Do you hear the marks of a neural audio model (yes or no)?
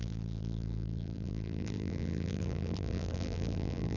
yes